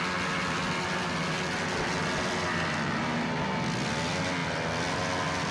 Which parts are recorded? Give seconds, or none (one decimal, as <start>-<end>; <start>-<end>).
0.0-5.5